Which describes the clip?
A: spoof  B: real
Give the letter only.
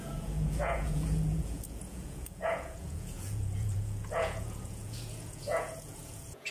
A